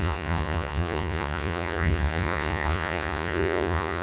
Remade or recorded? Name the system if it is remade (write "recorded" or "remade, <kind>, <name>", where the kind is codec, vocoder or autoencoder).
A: remade, vocoder, Vocos